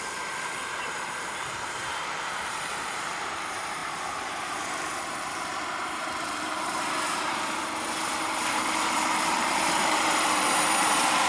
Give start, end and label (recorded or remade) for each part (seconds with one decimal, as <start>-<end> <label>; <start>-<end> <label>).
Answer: 0.0-11.3 remade